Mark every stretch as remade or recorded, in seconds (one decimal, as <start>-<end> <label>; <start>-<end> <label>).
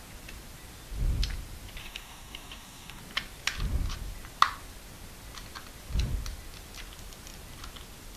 0.0-1.8 recorded; 1.8-3.0 remade; 3.0-8.2 recorded